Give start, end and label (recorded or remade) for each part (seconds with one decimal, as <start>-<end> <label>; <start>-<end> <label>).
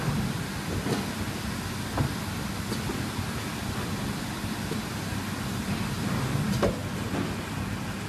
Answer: 0.0-8.1 recorded